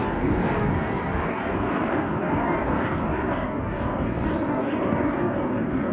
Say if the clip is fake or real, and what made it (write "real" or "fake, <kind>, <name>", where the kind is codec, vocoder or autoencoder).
fake, codec, DAC